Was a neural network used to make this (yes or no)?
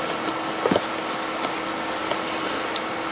no